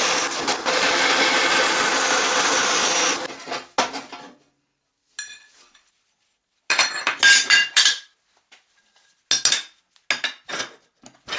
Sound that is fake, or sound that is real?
real